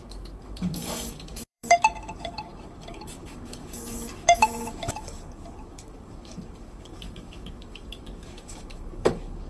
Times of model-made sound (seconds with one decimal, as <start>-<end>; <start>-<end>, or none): 0.0-9.5

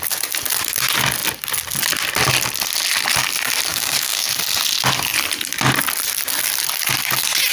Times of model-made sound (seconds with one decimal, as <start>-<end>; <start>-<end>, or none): 3.7-4.4

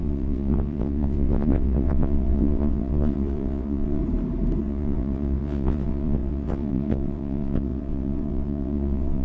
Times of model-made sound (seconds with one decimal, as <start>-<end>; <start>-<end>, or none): 0.0-4.0; 4.6-9.2

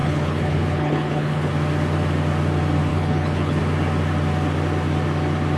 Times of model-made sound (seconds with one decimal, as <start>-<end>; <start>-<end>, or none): 0.0-1.5; 2.9-3.6

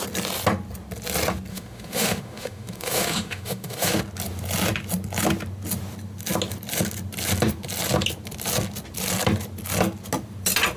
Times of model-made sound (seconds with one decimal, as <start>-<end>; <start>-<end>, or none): 1.5-4.0